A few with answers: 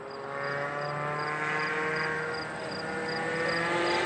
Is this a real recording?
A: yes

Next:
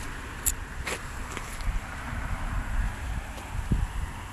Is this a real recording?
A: yes